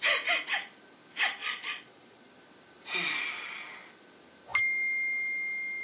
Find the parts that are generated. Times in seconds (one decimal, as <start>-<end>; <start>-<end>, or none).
1.4-2.3